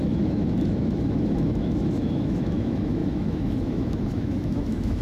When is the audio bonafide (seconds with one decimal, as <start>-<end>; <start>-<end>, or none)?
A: none